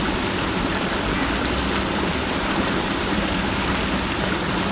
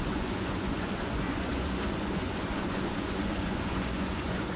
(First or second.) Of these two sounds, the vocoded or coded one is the second